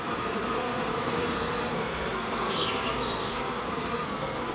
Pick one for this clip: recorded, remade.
remade